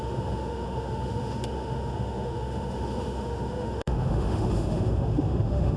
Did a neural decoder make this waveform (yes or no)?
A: yes